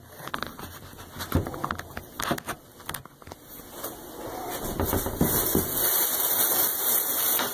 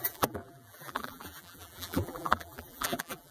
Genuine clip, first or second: first